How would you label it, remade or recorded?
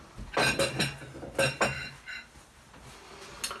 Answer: recorded